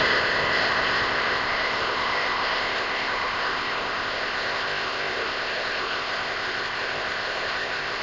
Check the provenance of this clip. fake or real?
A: fake